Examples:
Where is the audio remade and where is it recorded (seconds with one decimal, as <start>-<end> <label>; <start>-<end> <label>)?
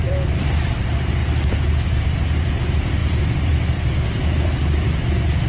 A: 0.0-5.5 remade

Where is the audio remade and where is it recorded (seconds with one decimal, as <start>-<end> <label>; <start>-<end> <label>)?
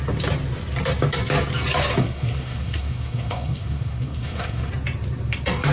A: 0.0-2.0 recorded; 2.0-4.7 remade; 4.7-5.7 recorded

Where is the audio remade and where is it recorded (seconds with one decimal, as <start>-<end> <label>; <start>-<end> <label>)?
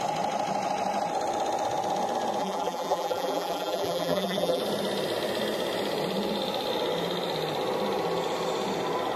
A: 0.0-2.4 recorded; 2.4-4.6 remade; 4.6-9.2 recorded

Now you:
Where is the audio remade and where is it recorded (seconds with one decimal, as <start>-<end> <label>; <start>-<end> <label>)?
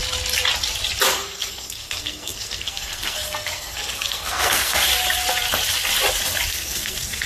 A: 0.0-1.1 recorded; 1.1-4.9 remade; 4.9-6.5 recorded; 6.5-7.3 remade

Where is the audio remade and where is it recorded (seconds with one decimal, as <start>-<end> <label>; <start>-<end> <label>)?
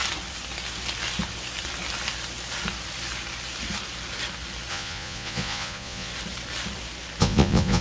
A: 0.0-4.7 recorded; 4.7-6.1 remade; 6.1-7.2 recorded; 7.2-7.8 remade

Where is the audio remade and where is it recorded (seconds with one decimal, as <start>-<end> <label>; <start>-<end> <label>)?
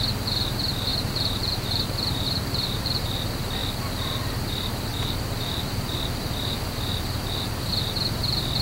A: 0.0-0.9 recorded; 0.9-3.0 remade; 3.0-8.6 recorded